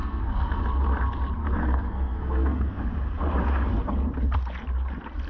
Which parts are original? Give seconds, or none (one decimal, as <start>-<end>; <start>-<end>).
0.6-1.4; 2.8-5.3

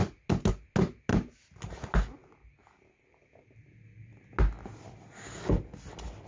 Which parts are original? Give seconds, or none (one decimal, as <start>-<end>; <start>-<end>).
0.0-6.3